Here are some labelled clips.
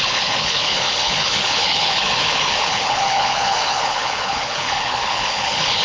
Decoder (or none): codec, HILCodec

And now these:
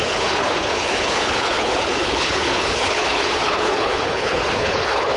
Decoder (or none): codec, HILCodec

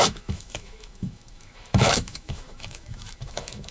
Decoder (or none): autoencoder, DAC-VAE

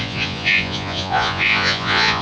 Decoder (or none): vocoder, Vocos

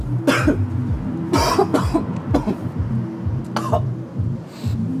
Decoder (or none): none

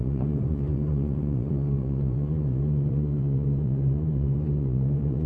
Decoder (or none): vocoder, Vocos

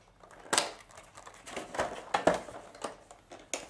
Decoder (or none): none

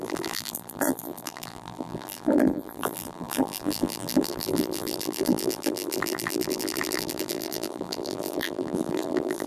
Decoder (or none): vocoder, BigVGAN v2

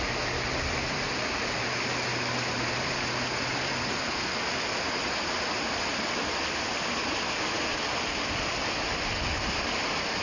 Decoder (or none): none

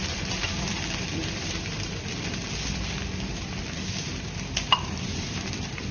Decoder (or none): vocoder, BigVGAN v2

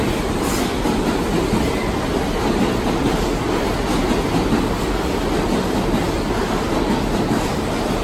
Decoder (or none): none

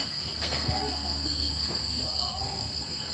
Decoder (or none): codec, SNAC